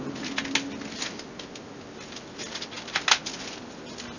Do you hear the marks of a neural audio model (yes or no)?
no